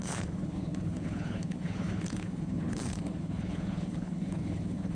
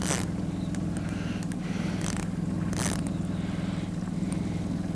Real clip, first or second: second